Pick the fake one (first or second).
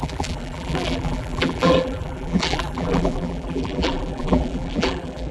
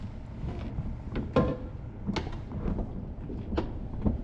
first